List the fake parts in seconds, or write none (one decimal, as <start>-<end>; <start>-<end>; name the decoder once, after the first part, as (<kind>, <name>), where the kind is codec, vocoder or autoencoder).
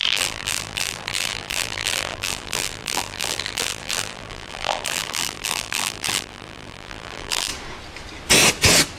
0.0-7.5 (vocoder, BigVGAN v2)